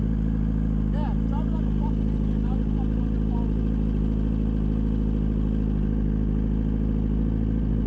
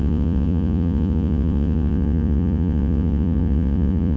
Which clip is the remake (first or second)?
second